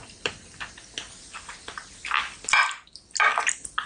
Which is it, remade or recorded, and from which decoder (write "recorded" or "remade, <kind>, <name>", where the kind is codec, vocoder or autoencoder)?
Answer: recorded